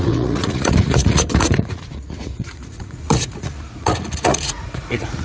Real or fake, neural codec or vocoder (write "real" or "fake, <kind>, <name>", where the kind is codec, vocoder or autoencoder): fake, vocoder, Vocos